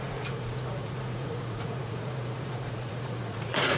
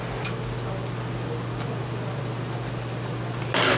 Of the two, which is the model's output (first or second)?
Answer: first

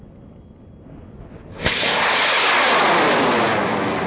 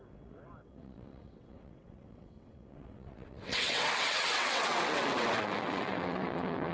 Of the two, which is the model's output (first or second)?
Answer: second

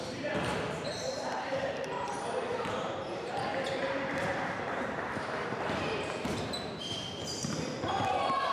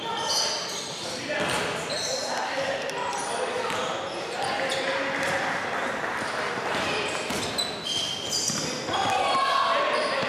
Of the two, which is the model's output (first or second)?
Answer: first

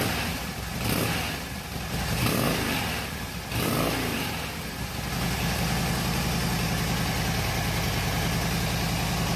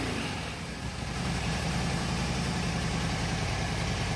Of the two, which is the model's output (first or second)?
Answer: second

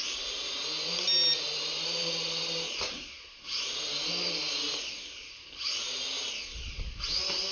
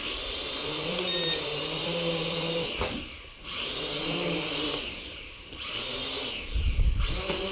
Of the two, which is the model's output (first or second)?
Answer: second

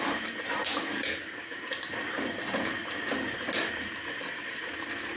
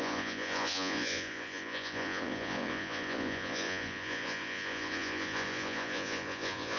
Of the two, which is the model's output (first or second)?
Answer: second